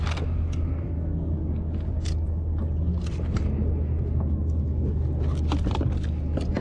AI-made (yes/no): no